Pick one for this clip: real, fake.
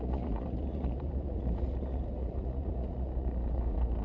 fake